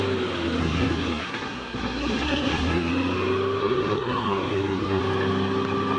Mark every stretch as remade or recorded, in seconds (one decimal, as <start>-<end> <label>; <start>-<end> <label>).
0.0-0.6 recorded; 0.6-2.9 remade; 2.9-3.6 recorded; 3.6-5.0 remade; 5.0-6.0 recorded